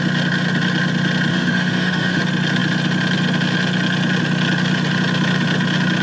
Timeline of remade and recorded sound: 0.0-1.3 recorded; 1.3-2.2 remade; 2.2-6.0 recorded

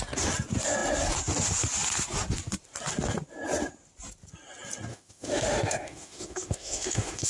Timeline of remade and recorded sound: 0.0-4.9 recorded; 4.9-7.3 remade

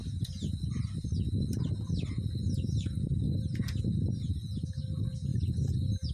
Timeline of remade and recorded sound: 0.0-6.1 recorded